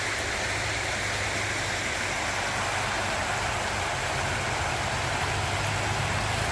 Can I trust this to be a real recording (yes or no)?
yes